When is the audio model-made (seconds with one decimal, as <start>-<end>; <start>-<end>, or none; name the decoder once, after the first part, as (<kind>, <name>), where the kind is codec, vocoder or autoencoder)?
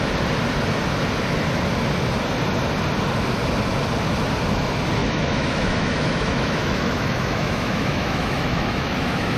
5.0-9.4 (autoencoder, DAC-VAE)